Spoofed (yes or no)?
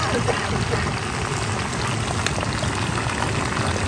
no